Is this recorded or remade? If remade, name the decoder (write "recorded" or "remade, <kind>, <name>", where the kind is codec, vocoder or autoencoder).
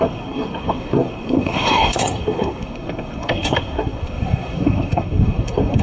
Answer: remade, codec, SNAC